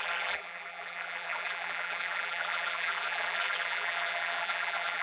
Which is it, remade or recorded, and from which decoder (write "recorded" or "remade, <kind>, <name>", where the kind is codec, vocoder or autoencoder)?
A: remade, vocoder, BigVGAN v2